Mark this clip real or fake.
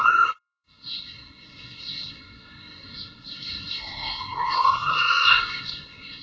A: fake